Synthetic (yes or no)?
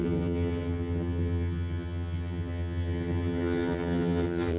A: yes